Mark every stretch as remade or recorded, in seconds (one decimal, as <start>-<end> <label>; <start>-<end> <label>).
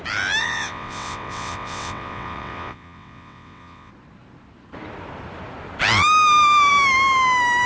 0.0-0.4 recorded; 0.4-3.9 remade; 3.9-7.7 recorded